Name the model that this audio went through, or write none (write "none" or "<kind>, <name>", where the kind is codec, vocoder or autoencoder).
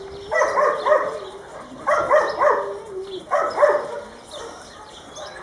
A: none